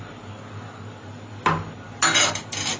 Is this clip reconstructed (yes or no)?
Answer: no